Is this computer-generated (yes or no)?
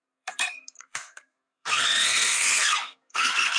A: yes